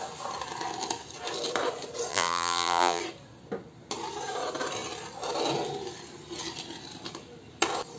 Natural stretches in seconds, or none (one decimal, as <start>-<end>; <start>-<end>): 0.0-2.1; 3.0-8.0